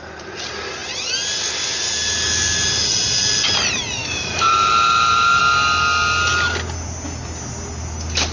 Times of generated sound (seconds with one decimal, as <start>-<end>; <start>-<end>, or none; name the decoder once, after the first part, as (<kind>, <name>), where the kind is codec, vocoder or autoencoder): 4.0-5.4 (autoencoder, DAC-VAE)